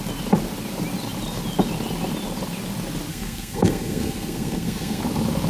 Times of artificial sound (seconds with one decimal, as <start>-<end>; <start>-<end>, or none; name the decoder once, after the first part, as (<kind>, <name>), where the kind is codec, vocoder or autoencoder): 3.1-5.0 (codec, SNAC)